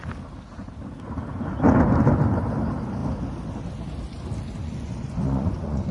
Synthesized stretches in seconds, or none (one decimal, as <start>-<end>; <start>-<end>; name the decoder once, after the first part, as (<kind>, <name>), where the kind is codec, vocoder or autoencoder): 4.6-5.9 (vocoder, Vocos)